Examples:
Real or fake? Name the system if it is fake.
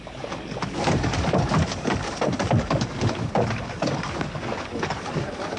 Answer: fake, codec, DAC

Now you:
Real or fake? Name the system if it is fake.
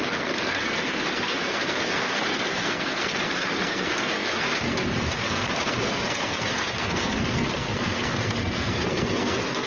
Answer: fake, codec, SNAC